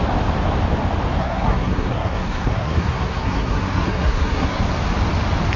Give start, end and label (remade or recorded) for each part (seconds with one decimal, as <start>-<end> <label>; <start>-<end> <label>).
0.0-1.2 recorded; 1.2-4.6 remade; 4.6-5.6 recorded